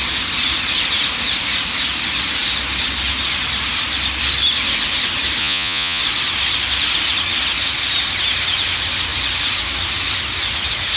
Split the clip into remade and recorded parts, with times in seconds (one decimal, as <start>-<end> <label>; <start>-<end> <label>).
0.0-5.4 recorded; 5.4-6.0 remade; 6.0-11.0 recorded